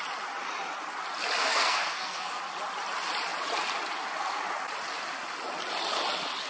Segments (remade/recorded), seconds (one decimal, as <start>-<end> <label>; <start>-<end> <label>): 0.0-1.4 recorded; 1.4-2.4 remade; 2.4-6.5 recorded